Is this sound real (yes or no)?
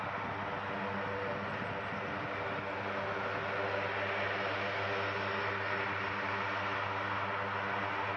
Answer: yes